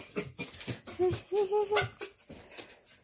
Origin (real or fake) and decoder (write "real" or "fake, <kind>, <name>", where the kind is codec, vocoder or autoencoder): real